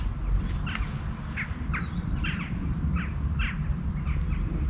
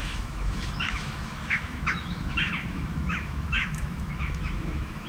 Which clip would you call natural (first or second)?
first